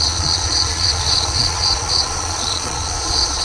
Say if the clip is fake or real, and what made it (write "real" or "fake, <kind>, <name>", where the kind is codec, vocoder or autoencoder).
fake, vocoder, Vocos